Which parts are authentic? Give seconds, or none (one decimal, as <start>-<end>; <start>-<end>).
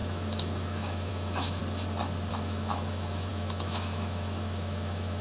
1.6-2.3